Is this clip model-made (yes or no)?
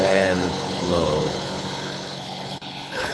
yes